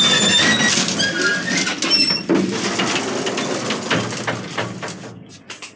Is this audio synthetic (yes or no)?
no